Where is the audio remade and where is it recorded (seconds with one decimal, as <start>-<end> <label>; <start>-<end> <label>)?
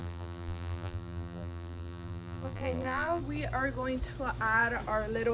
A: 0.0-3.2 remade; 3.2-5.3 recorded